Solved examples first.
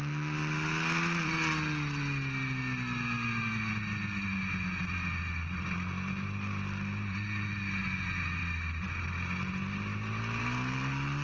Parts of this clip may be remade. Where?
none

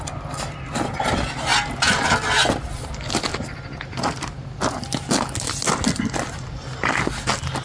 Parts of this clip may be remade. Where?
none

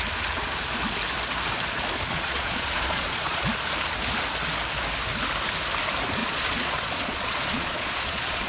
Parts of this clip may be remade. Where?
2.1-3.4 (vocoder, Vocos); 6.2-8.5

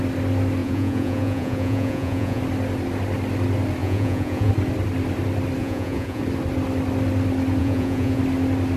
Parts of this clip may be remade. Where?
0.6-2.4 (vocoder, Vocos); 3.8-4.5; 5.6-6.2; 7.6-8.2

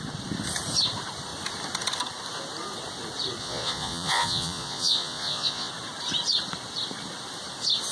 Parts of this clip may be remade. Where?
3.4-5.7 (vocoder, Vocos)

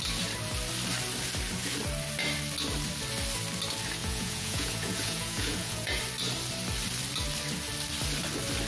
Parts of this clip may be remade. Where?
4.0-6.0 (vocoder, Vocos)